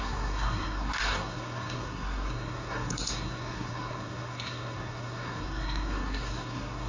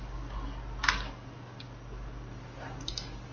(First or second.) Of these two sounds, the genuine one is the second